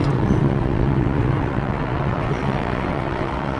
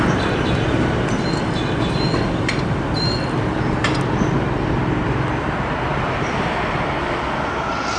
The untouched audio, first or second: second